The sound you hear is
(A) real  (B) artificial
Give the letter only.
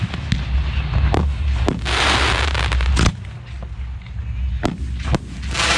A